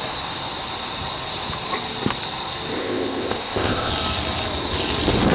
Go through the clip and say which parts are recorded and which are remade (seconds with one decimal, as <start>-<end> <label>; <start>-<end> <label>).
0.0-2.8 recorded; 2.8-3.9 remade; 3.9-5.3 recorded